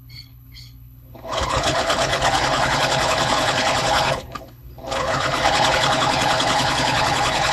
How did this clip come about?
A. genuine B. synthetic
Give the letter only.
B